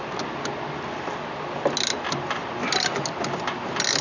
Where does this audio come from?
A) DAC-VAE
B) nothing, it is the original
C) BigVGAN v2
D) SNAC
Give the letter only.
B